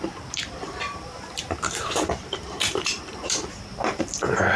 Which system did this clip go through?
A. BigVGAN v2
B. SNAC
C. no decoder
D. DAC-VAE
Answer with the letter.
A